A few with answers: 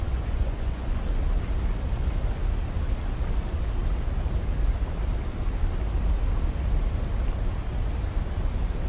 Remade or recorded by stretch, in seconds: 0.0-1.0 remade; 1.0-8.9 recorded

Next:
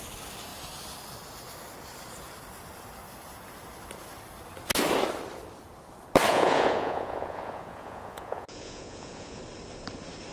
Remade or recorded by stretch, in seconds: 0.0-6.3 recorded; 6.3-9.4 remade; 9.4-10.3 recorded

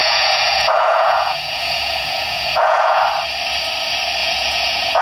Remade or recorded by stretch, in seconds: 0.0-3.0 remade; 3.0-4.2 recorded; 4.2-5.0 remade

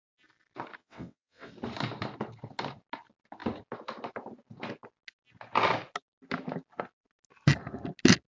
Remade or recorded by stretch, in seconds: 0.0-0.8 recorded; 0.8-1.5 remade; 1.5-8.3 recorded

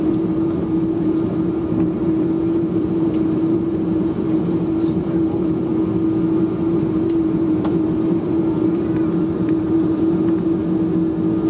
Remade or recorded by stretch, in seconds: 0.0-5.7 remade; 5.7-6.4 recorded; 6.4-10.6 remade; 10.6-11.5 recorded